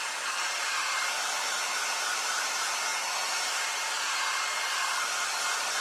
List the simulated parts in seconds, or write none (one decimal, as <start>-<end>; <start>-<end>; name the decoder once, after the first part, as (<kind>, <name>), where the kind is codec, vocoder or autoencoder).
none

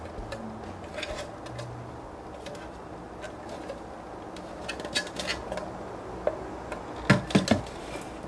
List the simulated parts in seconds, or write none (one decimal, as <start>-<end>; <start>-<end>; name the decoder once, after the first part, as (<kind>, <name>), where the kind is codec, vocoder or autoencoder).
none

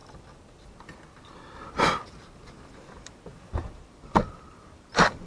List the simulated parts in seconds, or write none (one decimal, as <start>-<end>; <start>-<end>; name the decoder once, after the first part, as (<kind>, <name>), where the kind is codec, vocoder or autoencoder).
3.6-5.3 (vocoder, BigVGAN v2)

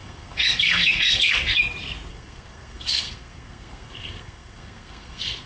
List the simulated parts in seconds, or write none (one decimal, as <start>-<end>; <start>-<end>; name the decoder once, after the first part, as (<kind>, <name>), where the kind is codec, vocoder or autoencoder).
0.0-1.6 (codec, SNAC); 2.1-5.5

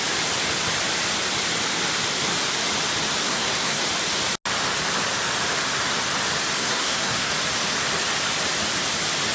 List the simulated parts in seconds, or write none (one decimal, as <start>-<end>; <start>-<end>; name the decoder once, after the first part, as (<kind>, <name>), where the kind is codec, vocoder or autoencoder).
3.2-3.8 (codec, SNAC); 6.6-7.3